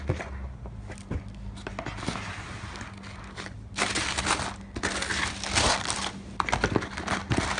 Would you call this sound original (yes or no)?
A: yes